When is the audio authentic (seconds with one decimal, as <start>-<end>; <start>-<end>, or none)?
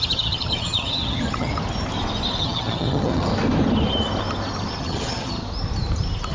1.5-2.4; 3.3-4.8; 5.4-6.3